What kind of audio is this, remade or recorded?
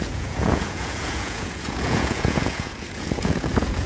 remade